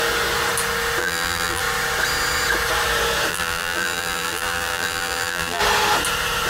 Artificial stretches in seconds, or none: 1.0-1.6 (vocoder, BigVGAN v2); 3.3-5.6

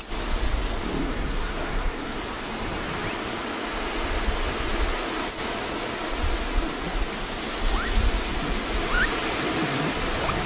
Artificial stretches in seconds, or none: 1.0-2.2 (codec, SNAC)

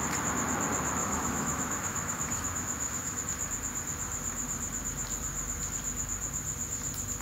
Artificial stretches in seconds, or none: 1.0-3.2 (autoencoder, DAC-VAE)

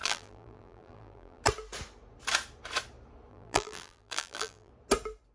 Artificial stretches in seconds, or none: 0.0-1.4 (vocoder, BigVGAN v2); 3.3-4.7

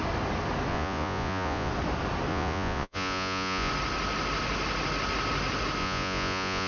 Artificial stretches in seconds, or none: 0.7-1.7 (vocoder, Vocos); 2.3-3.7; 5.8-6.7

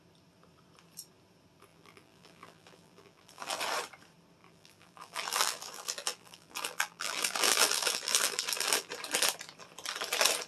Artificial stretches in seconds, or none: 1.7-3.6 (vocoder, BigVGAN v2); 4.4-8.9

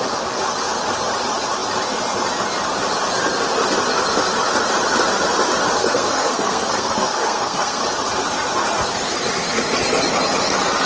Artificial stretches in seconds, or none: 5.8-7.8 (codec, SNAC)

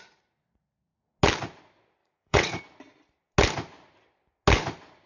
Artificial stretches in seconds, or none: 2.0-2.6 (vocoder, Vocos)